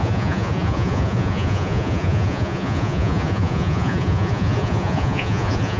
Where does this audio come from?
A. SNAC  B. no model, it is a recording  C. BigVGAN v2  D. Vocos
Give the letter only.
D